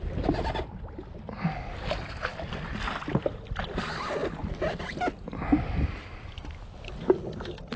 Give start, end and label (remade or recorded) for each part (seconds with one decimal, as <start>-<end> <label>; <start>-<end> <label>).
0.0-7.8 recorded